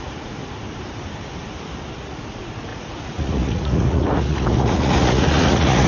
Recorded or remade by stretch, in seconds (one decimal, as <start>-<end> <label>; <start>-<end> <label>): 0.0-0.4 remade; 0.4-1.9 recorded; 1.9-5.9 remade